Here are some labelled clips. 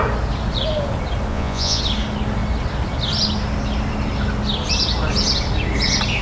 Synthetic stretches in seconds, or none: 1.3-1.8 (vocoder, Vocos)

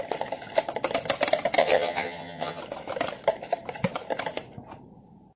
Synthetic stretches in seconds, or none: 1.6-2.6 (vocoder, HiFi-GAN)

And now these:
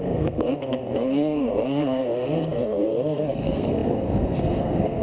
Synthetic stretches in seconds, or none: 0.0-5.0 (codec, SNAC)

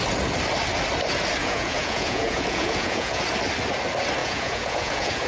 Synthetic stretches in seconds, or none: 1.4-3.2 (vocoder, Vocos); 4.2-5.3